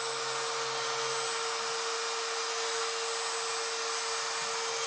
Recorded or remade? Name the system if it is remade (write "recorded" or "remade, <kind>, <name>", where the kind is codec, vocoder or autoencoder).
recorded